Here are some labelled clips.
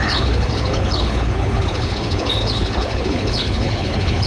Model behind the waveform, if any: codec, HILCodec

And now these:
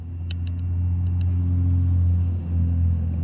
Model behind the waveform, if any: none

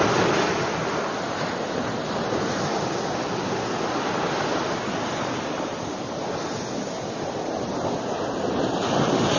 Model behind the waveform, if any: none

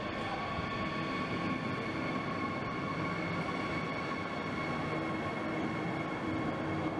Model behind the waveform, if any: none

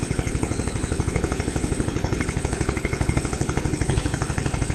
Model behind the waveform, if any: codec, HILCodec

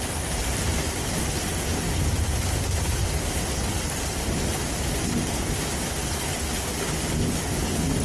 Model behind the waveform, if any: none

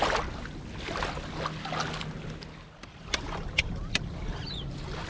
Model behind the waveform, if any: none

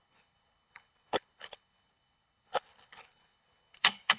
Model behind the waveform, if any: codec, HILCodec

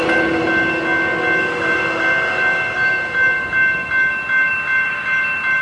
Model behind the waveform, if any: none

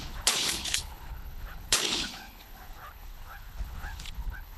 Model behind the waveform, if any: codec, HILCodec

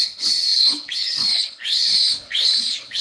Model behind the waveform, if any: codec, HILCodec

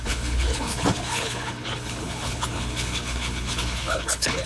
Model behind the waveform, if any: codec, HILCodec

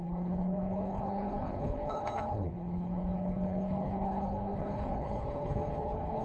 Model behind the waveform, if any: codec, HILCodec